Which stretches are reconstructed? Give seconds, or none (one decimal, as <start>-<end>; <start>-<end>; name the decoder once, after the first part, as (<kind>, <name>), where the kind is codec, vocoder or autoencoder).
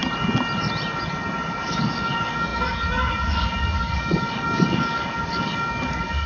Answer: 1.5-6.3 (codec, DAC)